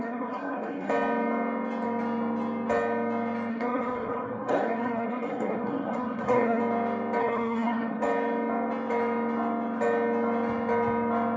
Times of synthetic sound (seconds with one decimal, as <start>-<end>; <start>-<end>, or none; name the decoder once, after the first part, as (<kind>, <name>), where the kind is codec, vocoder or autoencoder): 0.0-0.9 (codec, SNAC); 3.5-6.6; 7.2-8.0